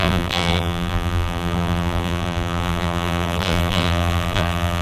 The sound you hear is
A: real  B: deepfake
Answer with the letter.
B